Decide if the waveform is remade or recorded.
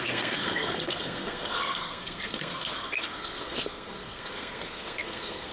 remade